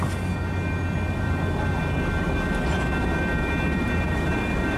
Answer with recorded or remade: recorded